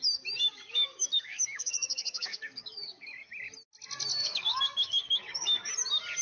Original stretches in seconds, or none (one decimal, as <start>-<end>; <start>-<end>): 0.0-0.5; 3.3-4.2; 5.7-6.2